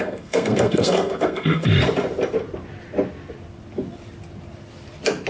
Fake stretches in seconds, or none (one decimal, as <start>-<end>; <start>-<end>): 0.0-1.7